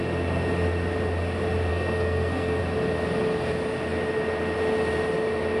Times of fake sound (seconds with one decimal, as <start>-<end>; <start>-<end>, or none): 1.7-2.6